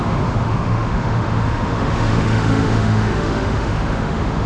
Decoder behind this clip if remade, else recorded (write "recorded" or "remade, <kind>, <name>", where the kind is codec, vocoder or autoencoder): remade, autoencoder, DAC-VAE